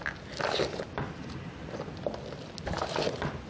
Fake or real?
real